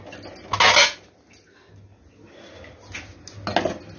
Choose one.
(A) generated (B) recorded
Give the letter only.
B